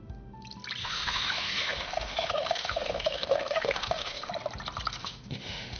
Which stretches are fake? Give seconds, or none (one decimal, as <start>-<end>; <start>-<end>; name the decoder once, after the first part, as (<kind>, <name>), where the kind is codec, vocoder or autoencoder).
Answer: 0.8-4.3 (autoencoder, DAC-VAE); 5.0-5.8